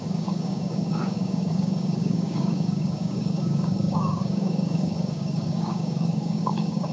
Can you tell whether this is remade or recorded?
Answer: remade